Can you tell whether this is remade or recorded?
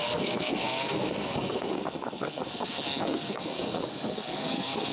remade